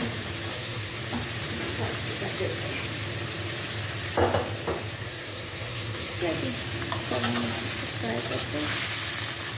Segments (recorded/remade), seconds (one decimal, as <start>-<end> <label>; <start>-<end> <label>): 0.0-0.5 recorded; 0.5-1.0 remade; 1.0-5.0 recorded; 5.0-6.2 remade; 6.2-9.6 recorded